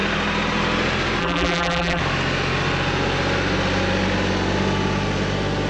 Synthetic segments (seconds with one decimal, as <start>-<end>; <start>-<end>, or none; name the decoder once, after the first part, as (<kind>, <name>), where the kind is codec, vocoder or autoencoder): 1.2-2.0 (vocoder, BigVGAN v2)